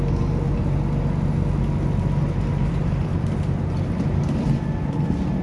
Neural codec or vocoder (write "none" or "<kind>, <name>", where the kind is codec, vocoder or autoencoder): none